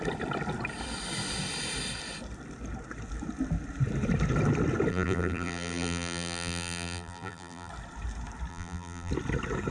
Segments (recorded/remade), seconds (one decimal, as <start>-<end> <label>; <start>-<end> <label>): 0.0-4.9 recorded; 4.9-7.7 remade; 7.7-8.5 recorded; 8.5-9.1 remade; 9.1-9.7 recorded